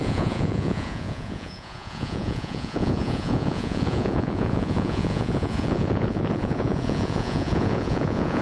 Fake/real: fake